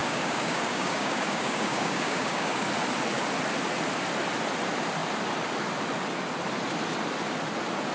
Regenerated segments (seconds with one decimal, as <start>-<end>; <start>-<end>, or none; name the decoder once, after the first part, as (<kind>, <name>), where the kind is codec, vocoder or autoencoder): 0.0-2.7 (codec, DAC)